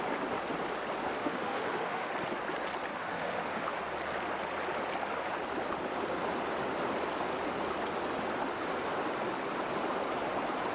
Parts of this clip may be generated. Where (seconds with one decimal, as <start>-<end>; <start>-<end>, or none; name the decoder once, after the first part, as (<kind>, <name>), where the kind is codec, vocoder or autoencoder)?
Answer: 1.2-2.1 (autoencoder, DAC-VAE); 2.9-3.8